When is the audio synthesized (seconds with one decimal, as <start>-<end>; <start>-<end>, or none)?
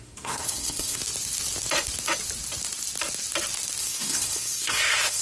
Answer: 0.0-1.0; 3.8-5.2